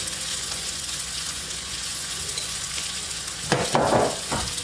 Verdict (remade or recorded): remade